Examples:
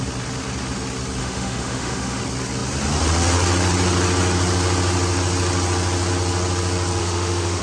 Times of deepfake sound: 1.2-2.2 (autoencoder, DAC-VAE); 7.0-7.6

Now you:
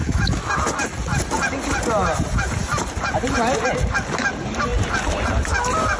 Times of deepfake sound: 0.0-0.5 (autoencoder, DAC-VAE)